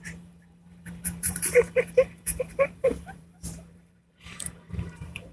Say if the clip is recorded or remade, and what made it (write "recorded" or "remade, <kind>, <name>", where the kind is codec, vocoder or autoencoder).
remade, vocoder, BigVGAN v2